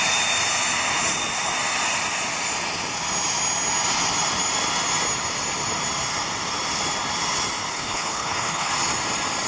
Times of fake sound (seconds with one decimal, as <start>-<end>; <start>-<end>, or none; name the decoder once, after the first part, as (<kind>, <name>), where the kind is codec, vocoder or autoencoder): 7.7-8.7 (codec, HILCodec)